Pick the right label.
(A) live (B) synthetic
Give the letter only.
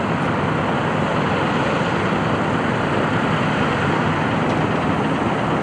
A